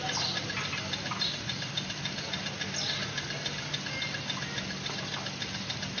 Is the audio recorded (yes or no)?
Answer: yes